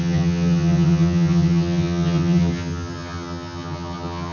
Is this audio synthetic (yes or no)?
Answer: yes